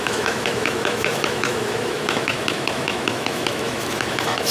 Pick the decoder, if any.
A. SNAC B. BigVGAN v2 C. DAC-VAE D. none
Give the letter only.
C